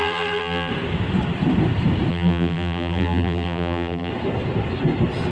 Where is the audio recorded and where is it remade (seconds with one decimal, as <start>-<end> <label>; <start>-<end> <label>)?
0.0-0.7 remade; 0.7-2.1 recorded; 2.1-4.1 remade; 4.1-5.3 recorded